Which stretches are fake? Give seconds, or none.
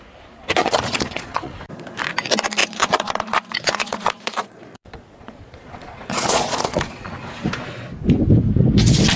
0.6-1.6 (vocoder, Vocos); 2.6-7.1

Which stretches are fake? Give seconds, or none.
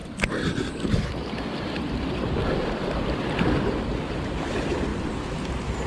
0.0-3.4 (vocoder, BigVGAN v2)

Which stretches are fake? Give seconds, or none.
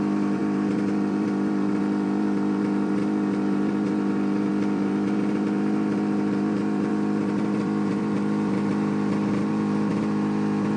0.0-10.8 (vocoder, BigVGAN v2)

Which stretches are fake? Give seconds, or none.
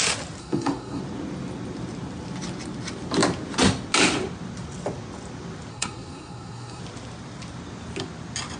0.4-1.0 (codec, SNAC); 5.7-6.8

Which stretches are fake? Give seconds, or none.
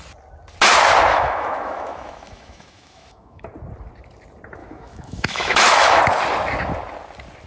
1.1-3.5 (autoencoder, DAC-VAE); 4.6-6.0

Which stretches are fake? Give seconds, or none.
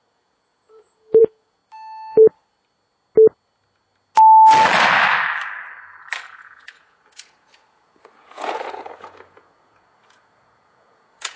0.0-1.6 (vocoder, Vocos); 6.3-11.4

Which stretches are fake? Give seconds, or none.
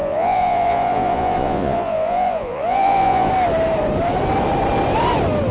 0.0-3.3 (vocoder, Vocos)